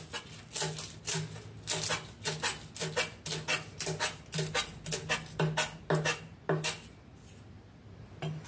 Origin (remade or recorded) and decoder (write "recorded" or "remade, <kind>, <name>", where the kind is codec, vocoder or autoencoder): recorded